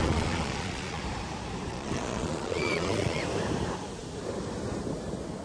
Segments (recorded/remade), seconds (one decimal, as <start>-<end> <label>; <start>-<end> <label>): 0.0-1.0 remade; 1.0-1.7 recorded; 1.7-3.2 remade; 3.2-5.4 recorded